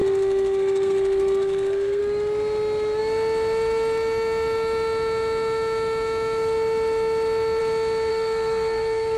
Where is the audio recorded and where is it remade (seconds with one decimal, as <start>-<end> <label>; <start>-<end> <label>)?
0.0-2.0 remade; 2.0-8.1 recorded; 8.1-9.2 remade